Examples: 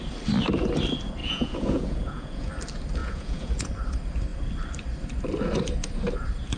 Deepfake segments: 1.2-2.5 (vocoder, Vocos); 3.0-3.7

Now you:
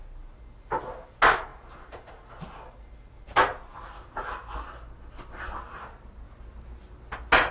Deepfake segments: none

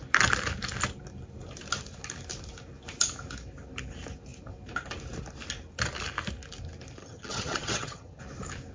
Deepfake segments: 7.0-8.2 (vocoder, HiFi-GAN)

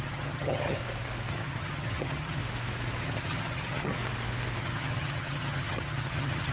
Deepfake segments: 0.0-0.8 (vocoder, HiFi-GAN); 1.3-2.4; 3.0-4.0; 4.6-6.5

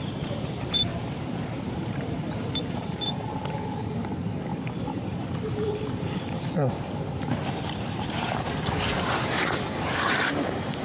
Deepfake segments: 0.0-10.8 (vocoder, BigVGAN v2)

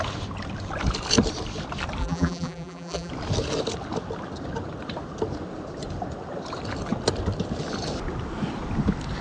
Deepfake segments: 2.0-3.1 (vocoder, BigVGAN v2)

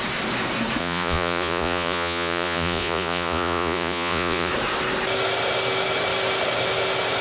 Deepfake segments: 0.8-4.5 (vocoder, Vocos)

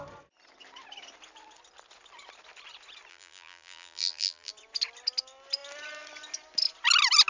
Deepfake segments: 3.1-4.5 (vocoder, BigVGAN v2)